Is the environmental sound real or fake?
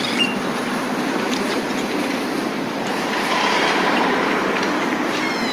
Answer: fake